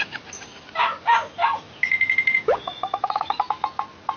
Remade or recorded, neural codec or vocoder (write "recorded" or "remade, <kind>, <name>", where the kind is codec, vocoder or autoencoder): recorded